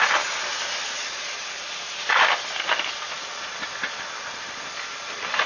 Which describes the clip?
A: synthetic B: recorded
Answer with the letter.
B